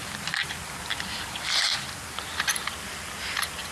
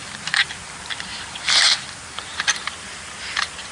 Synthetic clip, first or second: second